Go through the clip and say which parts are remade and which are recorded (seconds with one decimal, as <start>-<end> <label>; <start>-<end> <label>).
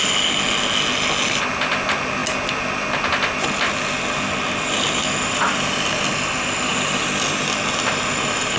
0.0-8.6 recorded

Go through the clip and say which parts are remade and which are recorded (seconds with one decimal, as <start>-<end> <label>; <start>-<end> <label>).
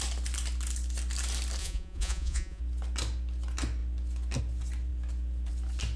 0.0-1.6 recorded; 1.6-2.6 remade; 2.6-6.0 recorded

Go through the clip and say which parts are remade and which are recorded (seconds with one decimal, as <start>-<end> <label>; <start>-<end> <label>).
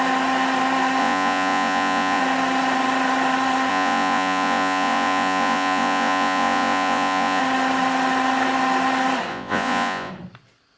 0.0-1.0 recorded; 1.0-2.2 remade; 2.2-3.7 recorded; 3.7-7.4 remade; 7.4-9.3 recorded; 9.3-10.1 remade; 10.1-10.8 recorded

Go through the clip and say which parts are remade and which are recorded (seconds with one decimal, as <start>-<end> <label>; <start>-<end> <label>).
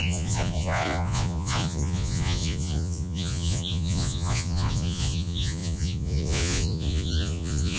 0.0-7.8 remade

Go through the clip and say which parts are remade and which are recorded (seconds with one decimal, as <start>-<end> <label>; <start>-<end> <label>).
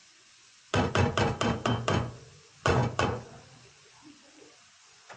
0.0-5.2 remade